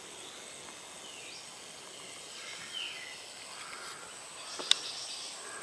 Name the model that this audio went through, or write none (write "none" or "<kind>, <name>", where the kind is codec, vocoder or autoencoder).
none